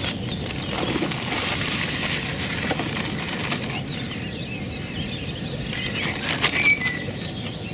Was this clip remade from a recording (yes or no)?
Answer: no